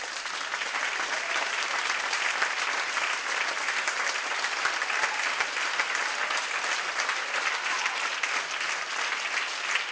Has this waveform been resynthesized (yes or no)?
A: no